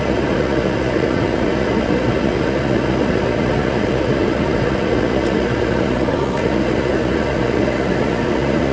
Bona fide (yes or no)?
no